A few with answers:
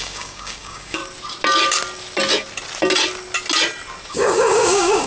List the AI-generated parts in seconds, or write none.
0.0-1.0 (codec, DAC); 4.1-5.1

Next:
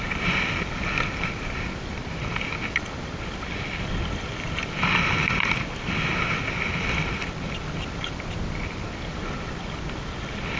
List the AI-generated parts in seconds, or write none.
2.0-2.6 (vocoder, BigVGAN v2)